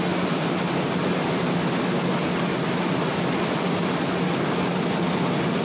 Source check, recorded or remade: recorded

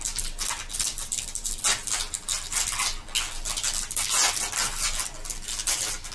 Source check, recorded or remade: recorded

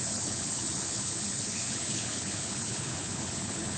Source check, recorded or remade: remade